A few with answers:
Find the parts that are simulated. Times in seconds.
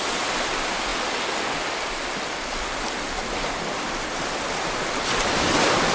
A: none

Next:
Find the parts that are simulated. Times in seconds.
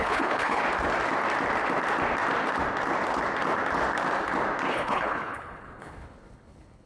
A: 0.0-0.6 (codec, HILCodec); 4.7-6.9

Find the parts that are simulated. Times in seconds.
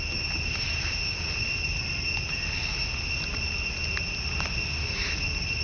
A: none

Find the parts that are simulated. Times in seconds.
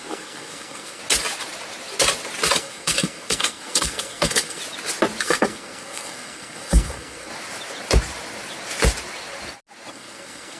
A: 0.0-1.0 (codec, SNAC); 2.6-4.6; 5.2-7.3; 9.9-10.6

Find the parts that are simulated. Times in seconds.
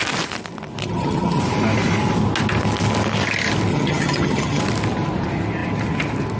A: 0.8-1.4 (vocoder, HiFi-GAN); 3.7-4.6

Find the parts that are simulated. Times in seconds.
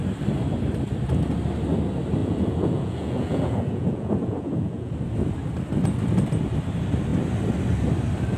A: 2.2-4.9 (vocoder, Vocos)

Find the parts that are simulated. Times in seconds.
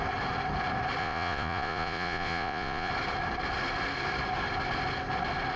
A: 1.0-2.9 (vocoder, Vocos)